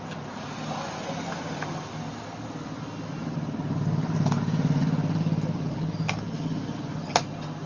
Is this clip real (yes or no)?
yes